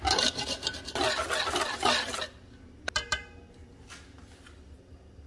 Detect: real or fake real